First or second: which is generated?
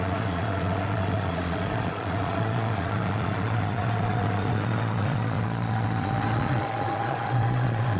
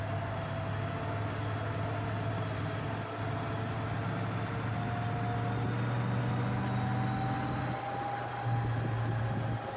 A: first